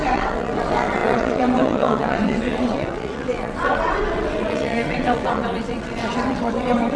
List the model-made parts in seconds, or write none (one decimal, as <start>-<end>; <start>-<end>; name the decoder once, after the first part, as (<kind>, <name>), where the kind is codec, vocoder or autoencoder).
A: 0.0-7.0 (vocoder, WaveNeXt)